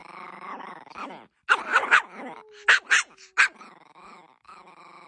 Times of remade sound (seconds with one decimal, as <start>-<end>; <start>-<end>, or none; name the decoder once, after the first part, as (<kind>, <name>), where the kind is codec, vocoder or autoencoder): none